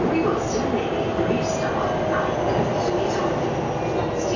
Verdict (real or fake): real